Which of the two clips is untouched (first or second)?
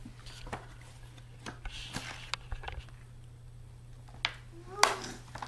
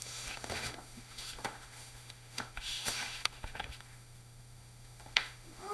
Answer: first